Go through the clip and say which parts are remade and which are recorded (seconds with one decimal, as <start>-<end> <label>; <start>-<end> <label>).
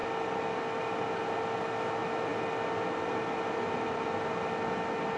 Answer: 0.0-0.6 remade; 0.6-5.2 recorded